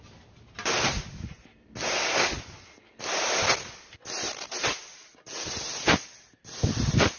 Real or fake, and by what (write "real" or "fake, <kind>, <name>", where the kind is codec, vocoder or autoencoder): real